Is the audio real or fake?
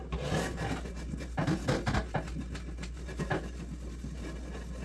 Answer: real